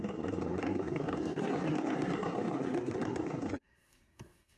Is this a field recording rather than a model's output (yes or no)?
no